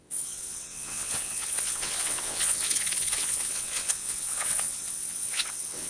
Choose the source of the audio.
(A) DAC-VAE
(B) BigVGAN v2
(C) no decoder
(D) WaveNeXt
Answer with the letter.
D